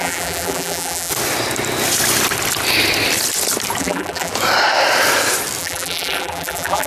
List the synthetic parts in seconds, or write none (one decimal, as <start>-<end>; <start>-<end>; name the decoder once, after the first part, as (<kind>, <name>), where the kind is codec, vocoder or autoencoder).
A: 0.0-1.1 (vocoder, BigVGAN v2); 3.8-4.3; 5.6-6.9